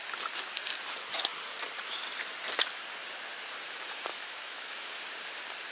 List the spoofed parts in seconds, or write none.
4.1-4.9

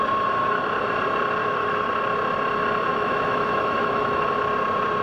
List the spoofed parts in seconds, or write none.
1.4-1.9; 2.9-4.3

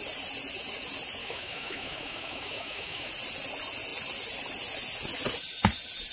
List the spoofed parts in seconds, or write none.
1.2-3.1

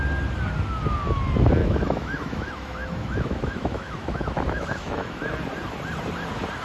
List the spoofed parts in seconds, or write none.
1.6-5.2

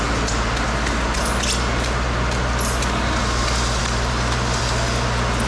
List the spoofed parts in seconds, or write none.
none

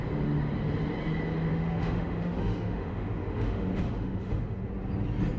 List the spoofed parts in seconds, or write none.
1.5-4.7

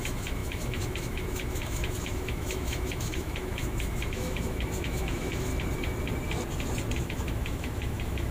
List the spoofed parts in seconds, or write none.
0.0-5.5; 7.0-8.3

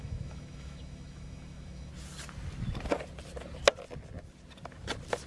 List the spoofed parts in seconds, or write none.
0.0-1.9